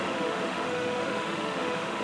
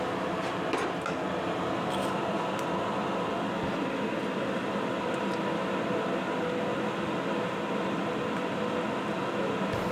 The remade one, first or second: first